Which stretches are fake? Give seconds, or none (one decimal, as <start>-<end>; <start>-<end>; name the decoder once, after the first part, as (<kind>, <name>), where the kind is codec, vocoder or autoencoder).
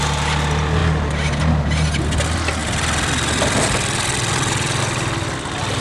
2.6-4.8 (vocoder, BigVGAN v2)